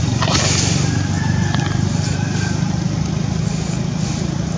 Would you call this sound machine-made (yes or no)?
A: no